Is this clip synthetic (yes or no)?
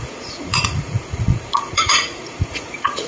yes